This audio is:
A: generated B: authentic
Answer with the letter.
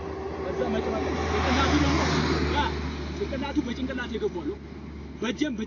B